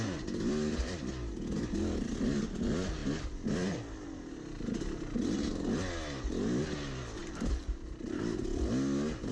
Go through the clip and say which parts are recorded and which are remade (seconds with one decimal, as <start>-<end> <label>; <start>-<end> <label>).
0.0-7.2 recorded; 7.2-8.2 remade; 8.2-9.3 recorded